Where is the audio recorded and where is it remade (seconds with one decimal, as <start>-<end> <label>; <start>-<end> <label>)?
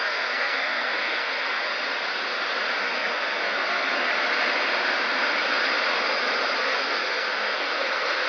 0.0-1.6 remade; 1.6-2.8 recorded; 2.8-4.1 remade; 4.1-6.6 recorded; 6.6-8.3 remade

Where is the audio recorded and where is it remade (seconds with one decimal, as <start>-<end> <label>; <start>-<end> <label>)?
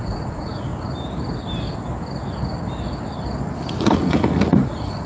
0.0-0.7 remade; 0.7-3.8 recorded; 3.8-5.1 remade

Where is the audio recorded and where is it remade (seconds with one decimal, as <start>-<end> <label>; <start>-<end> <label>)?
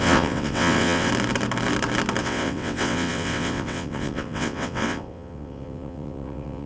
0.0-1.1 remade; 1.1-2.2 recorded; 2.2-6.7 remade